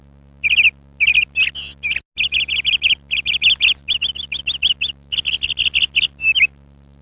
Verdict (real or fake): real